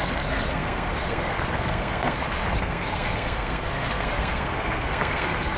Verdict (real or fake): fake